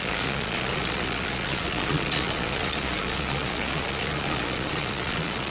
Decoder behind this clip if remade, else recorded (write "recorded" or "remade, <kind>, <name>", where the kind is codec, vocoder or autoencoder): remade, vocoder, Vocos